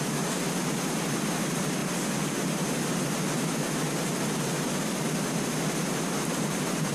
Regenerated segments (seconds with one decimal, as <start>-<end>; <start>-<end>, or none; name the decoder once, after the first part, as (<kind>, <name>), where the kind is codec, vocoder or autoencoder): none